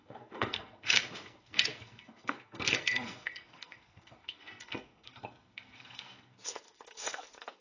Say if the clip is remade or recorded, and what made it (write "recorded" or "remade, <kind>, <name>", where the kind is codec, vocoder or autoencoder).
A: remade, codec, SNAC